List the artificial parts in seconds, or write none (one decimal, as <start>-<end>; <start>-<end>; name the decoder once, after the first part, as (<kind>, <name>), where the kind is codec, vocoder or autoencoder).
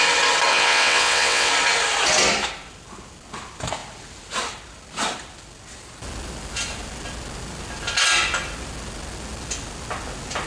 0.5-1.5 (vocoder, WaveNeXt)